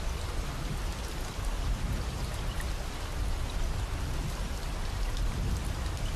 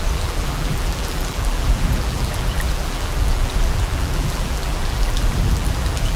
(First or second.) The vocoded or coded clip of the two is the second